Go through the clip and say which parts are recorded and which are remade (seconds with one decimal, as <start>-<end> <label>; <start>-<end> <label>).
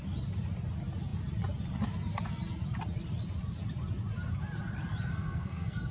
0.0-5.1 recorded; 5.1-5.9 remade